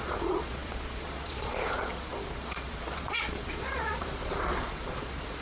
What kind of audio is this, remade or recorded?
remade